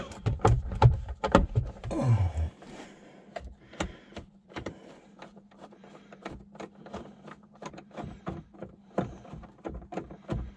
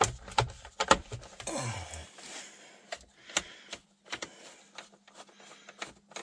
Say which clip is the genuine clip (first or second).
second